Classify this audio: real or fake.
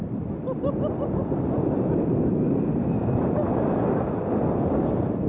real